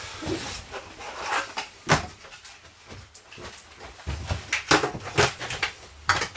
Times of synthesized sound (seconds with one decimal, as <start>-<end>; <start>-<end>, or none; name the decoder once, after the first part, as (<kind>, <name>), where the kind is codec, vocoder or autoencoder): 0.0-2.7 (vocoder, BigVGAN v2); 5.0-6.4